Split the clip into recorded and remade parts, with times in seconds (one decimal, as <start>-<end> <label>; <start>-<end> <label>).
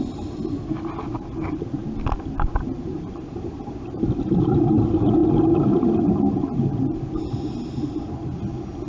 0.0-8.9 recorded